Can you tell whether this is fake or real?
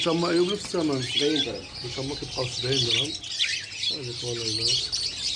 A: real